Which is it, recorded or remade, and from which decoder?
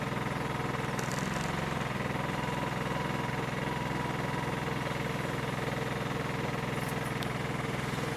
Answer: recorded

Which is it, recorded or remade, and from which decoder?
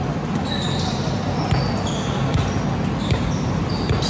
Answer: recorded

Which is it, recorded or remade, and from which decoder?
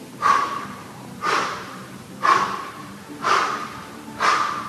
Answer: remade, vocoder, BigVGAN v2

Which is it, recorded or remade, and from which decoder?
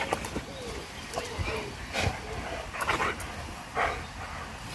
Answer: recorded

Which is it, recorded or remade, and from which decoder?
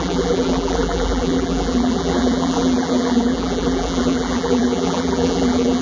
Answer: remade, vocoder, BigVGAN v2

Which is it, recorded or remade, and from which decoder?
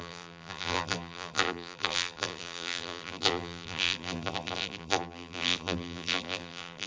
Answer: remade, vocoder, BigVGAN v2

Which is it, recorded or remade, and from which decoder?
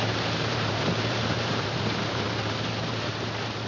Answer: remade, vocoder, BigVGAN v2